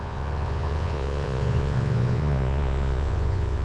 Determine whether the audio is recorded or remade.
remade